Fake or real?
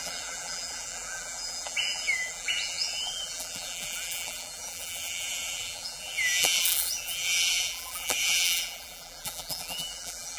fake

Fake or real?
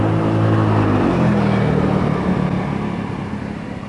real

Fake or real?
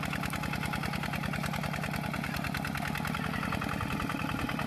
real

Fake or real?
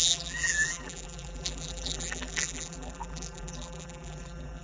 fake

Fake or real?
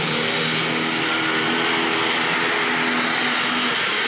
real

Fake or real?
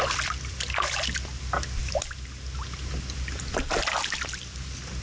real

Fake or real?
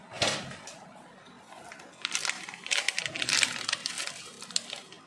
real